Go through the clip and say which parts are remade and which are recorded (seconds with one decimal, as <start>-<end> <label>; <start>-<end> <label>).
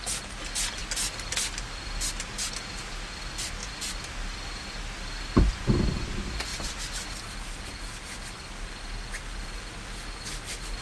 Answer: 0.0-10.8 recorded